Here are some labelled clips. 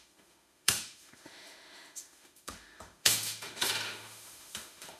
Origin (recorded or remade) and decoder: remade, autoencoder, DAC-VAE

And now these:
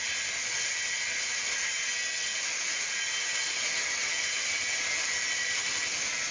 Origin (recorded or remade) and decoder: recorded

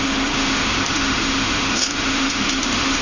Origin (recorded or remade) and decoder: remade, autoencoder, DAC-VAE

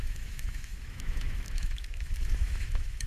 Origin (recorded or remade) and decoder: remade, autoencoder, DAC-VAE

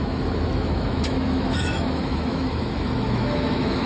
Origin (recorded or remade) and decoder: remade, autoencoder, DAC-VAE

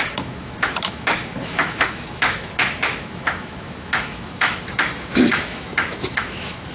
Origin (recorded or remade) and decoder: remade, autoencoder, DAC-VAE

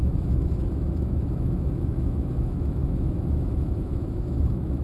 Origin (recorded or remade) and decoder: remade, autoencoder, DAC-VAE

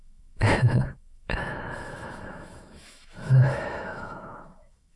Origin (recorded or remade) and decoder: remade, autoencoder, DAC-VAE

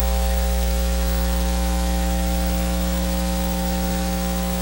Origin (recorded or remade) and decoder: remade, autoencoder, DAC-VAE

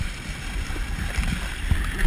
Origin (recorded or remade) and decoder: recorded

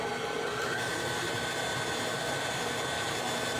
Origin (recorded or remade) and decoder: recorded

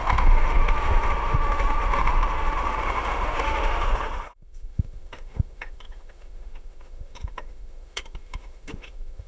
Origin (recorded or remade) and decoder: remade, autoencoder, DAC-VAE